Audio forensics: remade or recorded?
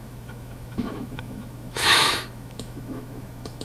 remade